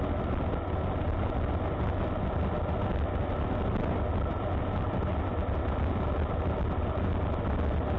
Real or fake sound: real